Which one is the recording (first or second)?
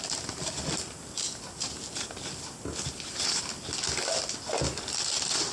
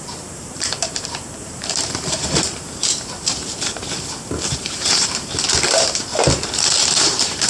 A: first